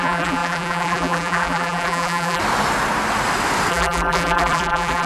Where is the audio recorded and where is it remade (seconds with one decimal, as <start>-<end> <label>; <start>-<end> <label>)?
0.0-2.4 remade; 2.4-3.7 recorded; 3.7-5.1 remade